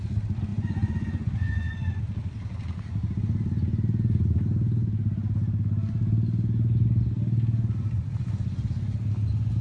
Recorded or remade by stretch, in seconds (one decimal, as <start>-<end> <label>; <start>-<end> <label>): 0.0-0.5 recorded; 0.5-2.0 remade; 2.0-9.6 recorded